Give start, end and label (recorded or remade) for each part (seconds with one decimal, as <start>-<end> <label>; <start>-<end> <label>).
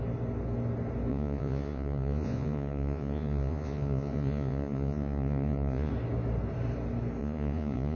0.0-1.1 recorded; 1.1-5.9 remade; 5.9-7.2 recorded; 7.2-8.0 remade